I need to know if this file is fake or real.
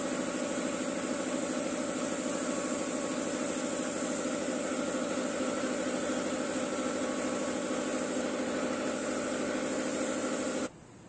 real